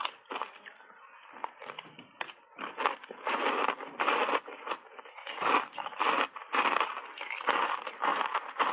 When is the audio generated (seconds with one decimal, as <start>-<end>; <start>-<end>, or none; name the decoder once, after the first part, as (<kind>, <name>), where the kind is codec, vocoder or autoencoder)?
8.1-8.7 (vocoder, BigVGAN v2)